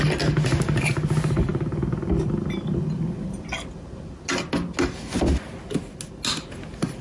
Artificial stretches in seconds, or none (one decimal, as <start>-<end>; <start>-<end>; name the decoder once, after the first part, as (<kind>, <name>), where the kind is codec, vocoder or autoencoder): none